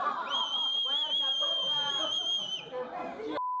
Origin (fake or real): real